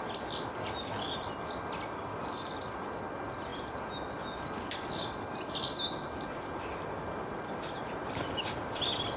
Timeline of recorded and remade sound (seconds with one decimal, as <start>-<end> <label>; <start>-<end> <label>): 0.0-9.2 recorded